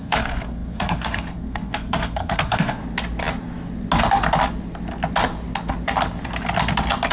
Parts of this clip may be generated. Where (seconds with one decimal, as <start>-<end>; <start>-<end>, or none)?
0.0-2.8